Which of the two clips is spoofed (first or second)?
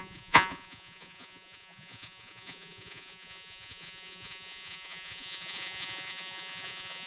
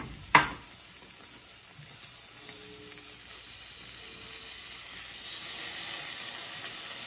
first